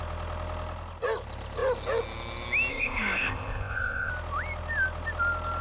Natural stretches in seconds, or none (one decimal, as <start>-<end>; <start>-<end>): 0.0-2.7; 4.1-5.6